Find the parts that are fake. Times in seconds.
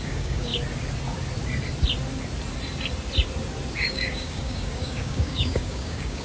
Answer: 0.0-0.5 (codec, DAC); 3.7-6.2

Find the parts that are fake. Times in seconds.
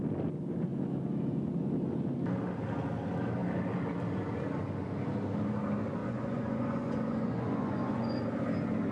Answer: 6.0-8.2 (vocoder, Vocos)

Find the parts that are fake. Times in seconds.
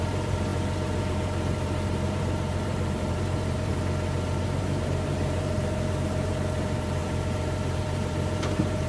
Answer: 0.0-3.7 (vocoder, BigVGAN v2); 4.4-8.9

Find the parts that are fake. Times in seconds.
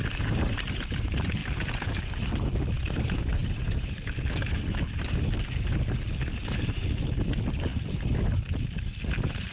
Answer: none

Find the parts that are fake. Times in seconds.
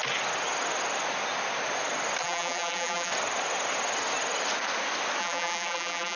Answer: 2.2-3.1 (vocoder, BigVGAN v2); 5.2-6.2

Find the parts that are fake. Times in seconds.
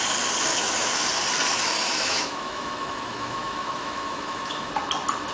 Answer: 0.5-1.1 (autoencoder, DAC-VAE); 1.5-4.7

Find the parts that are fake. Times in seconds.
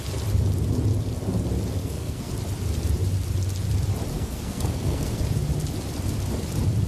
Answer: 1.8-2.3 (codec, SNAC); 4.1-5.2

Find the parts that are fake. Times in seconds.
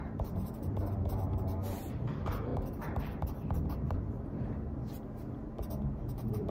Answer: 0.0-4.9 (vocoder, BigVGAN v2); 6.1-6.5